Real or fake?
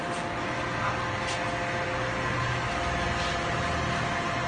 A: real